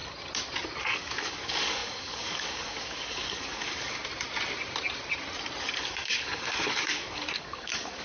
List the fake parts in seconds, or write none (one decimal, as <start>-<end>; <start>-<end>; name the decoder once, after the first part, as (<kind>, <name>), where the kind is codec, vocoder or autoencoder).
0.8-4.0 (codec, DAC); 5.6-8.0